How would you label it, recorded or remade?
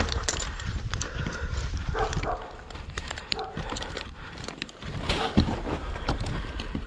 remade